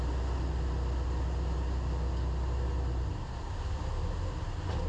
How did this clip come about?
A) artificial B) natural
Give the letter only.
B